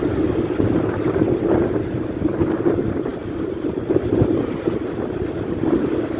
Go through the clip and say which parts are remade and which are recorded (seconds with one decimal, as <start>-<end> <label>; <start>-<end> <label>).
0.0-6.2 recorded